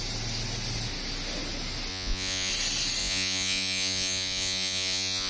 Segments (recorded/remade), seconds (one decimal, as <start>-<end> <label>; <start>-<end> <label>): 0.0-1.9 recorded; 1.9-2.5 remade; 2.5-3.0 recorded; 3.0-5.3 remade